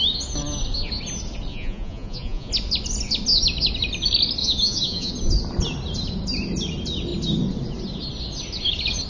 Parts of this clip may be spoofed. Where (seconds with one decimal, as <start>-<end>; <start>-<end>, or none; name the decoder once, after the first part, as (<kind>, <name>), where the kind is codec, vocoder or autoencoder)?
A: 1.5-2.5 (vocoder, Vocos); 4.4-5.1